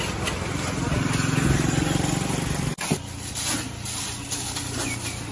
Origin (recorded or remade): recorded